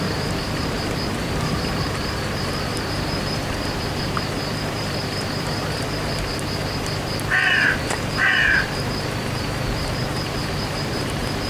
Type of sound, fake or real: fake